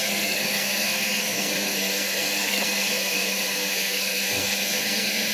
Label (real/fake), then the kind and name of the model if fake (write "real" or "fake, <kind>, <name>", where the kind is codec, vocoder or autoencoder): fake, codec, SNAC